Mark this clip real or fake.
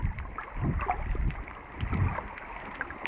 real